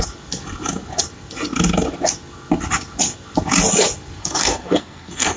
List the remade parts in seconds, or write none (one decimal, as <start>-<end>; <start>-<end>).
4.2-5.4